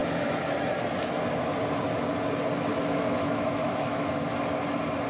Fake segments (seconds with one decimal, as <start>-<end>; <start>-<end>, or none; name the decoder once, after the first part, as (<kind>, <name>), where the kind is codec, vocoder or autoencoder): 0.0-0.7 (autoencoder, DAC-VAE); 2.7-4.1